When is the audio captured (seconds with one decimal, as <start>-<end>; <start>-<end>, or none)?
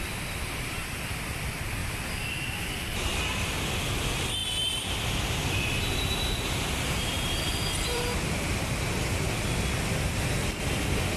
0.0-4.4; 8.0-11.2